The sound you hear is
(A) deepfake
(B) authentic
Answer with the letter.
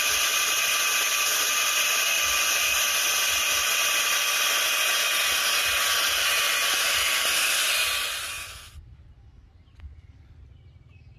B